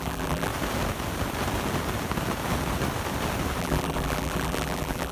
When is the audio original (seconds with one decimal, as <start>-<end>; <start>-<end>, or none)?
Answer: 0.5-3.6